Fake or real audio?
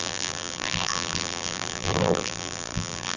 fake